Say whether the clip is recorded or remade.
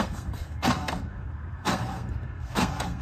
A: remade